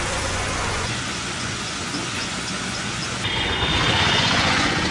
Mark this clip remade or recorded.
remade